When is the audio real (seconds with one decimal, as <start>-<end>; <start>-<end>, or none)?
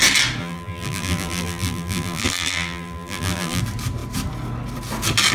0.0-0.4; 3.6-5.3